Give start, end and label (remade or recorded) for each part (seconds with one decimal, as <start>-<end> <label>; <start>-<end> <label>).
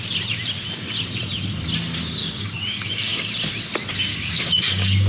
0.0-2.2 recorded; 2.2-3.3 remade; 3.3-4.1 recorded; 4.1-5.1 remade